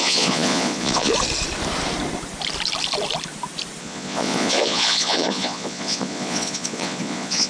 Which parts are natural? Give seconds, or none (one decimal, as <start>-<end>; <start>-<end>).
1.1-3.8